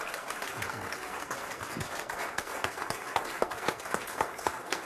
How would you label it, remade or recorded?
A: remade